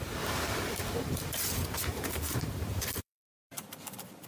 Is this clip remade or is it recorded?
remade